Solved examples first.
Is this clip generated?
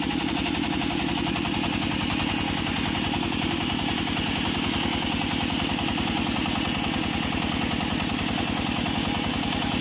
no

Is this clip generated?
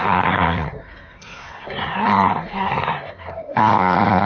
yes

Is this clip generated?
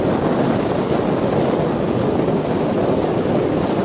no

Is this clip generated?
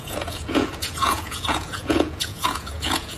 yes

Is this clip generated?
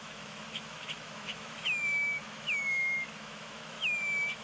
yes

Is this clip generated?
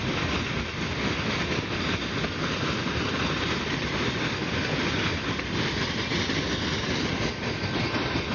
no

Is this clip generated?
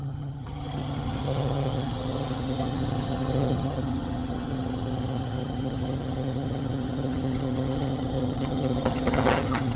yes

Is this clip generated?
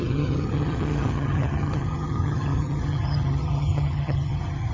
yes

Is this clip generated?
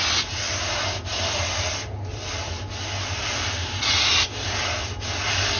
no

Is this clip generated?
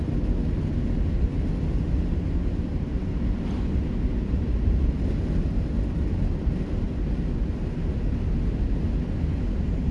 no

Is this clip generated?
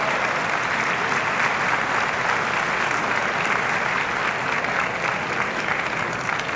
no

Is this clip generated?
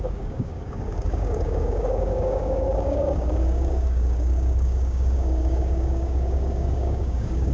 yes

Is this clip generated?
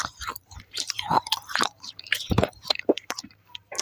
yes